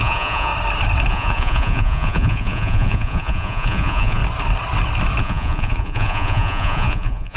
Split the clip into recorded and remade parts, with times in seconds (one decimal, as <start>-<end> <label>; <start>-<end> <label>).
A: 0.0-0.5 remade; 0.5-1.1 recorded; 1.1-4.2 remade; 4.2-5.2 recorded; 5.2-7.4 remade